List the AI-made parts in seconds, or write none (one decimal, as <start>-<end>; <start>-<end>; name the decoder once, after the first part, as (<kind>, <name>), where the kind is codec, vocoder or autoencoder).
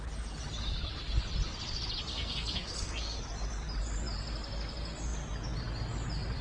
2.1-3.2 (codec, SNAC)